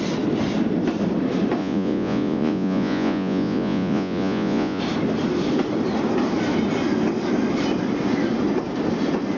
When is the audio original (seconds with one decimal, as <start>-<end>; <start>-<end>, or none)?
0.0-1.6; 4.8-9.4